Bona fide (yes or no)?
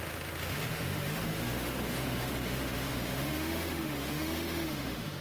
no